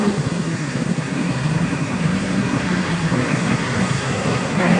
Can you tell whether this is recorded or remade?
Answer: remade